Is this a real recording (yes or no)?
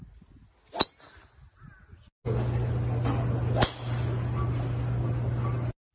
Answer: yes